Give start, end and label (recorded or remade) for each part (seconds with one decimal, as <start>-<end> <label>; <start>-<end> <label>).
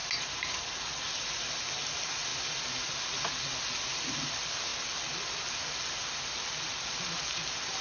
0.0-7.8 recorded